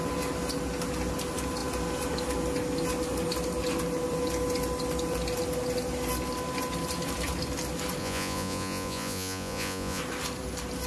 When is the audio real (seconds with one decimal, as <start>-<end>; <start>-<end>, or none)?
0.0-8.0; 10.0-10.9